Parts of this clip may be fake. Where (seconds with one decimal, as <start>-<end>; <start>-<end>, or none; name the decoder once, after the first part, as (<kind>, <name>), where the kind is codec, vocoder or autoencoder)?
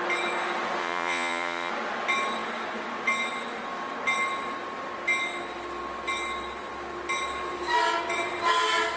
0.8-1.7 (vocoder, Vocos)